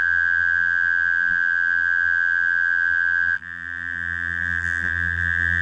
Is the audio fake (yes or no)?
yes